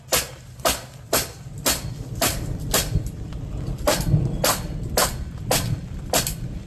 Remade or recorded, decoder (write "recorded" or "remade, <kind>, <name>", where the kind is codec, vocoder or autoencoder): recorded